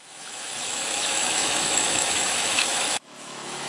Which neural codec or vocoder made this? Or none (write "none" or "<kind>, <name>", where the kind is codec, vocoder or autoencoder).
autoencoder, DAC-VAE